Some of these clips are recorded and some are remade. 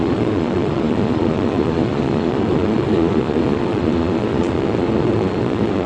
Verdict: remade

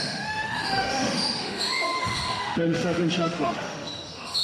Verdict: remade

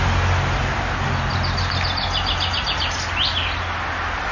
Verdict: recorded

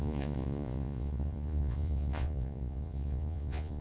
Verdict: remade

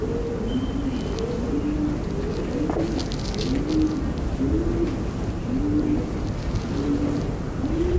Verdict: recorded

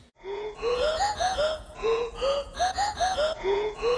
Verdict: remade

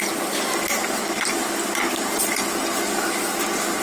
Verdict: recorded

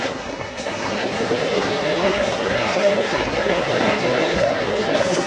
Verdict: remade